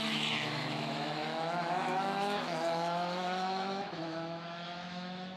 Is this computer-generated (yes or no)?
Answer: yes